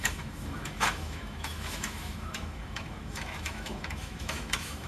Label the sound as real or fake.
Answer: fake